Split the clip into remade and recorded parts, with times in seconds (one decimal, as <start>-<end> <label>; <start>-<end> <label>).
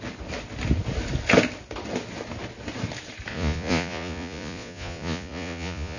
0.0-3.3 recorded; 3.3-6.0 remade